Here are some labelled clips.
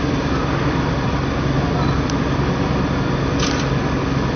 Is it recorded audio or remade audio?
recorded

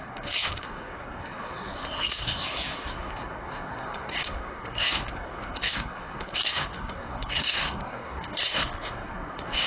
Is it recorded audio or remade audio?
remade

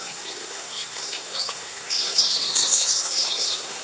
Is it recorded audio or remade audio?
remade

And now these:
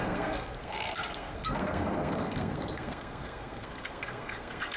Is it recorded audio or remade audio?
remade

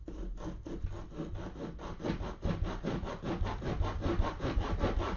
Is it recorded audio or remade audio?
recorded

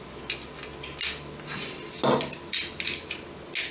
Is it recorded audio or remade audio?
recorded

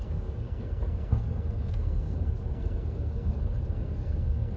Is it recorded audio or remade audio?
remade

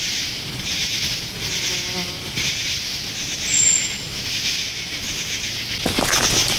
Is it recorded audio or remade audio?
recorded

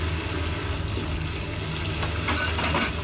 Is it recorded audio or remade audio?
recorded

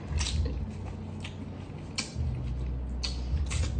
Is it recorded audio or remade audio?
recorded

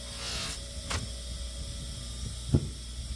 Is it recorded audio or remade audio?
recorded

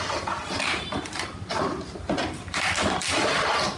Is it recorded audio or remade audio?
recorded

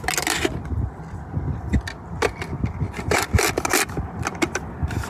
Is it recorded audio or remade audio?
recorded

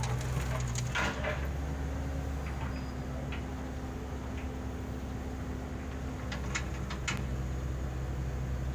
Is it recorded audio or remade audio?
recorded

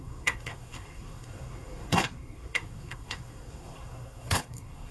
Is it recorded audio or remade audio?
remade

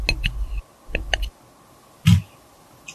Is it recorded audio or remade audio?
recorded